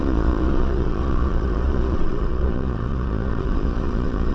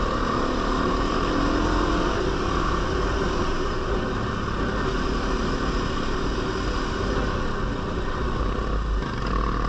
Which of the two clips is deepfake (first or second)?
first